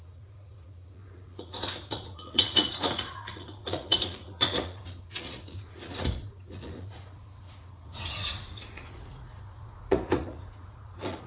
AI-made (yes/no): yes